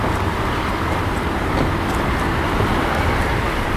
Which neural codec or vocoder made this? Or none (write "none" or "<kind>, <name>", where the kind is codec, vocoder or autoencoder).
none